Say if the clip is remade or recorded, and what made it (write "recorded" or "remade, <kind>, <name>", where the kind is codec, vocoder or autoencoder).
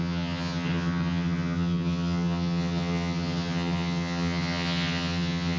remade, vocoder, HiFi-GAN